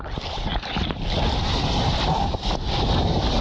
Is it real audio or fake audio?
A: real